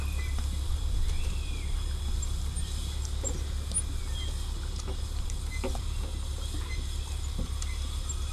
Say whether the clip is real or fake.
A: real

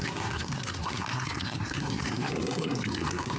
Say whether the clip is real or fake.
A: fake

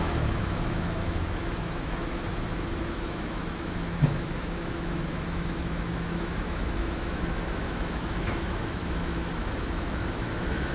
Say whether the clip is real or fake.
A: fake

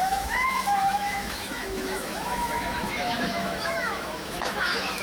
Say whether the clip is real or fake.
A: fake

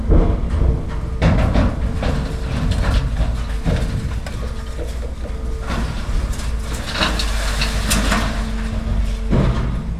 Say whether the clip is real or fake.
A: real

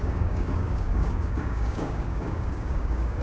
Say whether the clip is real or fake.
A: fake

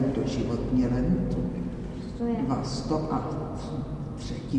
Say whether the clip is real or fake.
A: real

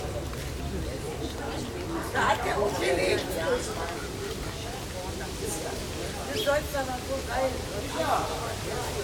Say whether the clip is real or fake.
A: real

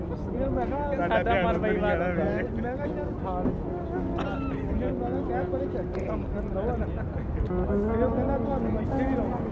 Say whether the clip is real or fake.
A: real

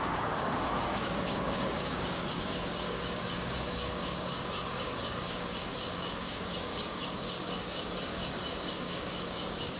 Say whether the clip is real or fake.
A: fake